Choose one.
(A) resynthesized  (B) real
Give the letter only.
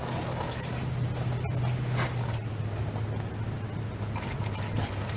B